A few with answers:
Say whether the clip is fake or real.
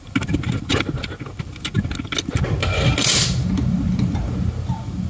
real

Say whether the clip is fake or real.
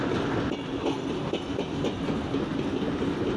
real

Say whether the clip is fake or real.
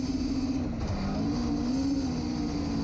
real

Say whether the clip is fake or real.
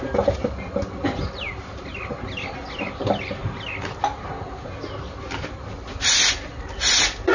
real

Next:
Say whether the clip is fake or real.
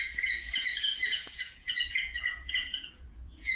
fake